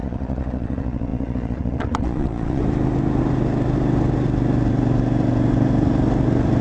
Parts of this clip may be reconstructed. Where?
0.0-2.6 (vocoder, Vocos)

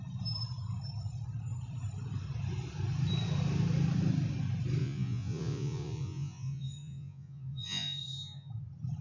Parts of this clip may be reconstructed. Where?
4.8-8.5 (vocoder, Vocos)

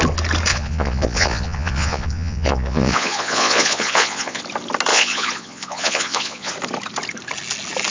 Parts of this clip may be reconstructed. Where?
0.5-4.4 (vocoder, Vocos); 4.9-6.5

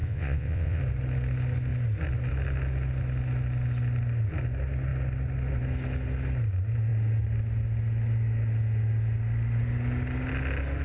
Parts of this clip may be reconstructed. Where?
0.0-0.8 (vocoder, WaveNeXt)

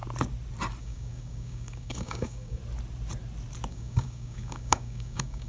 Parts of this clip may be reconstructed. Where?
0.8-2.6 (codec, DAC); 3.7-5.5

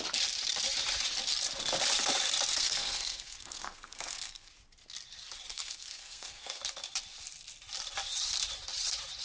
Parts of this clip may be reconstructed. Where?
2.5-4.5 (codec, SNAC); 5.5-6.6

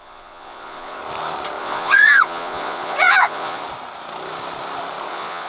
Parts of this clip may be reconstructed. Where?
0.0-1.0 (vocoder, Vocos); 1.6-3.6; 5.1-5.5